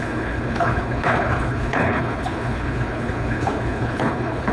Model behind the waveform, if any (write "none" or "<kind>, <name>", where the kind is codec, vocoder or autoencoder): codec, HILCodec